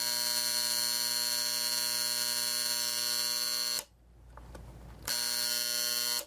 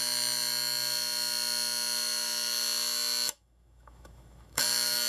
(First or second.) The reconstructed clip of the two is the second